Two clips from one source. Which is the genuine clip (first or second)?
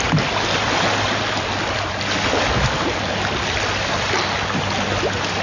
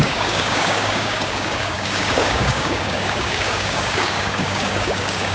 first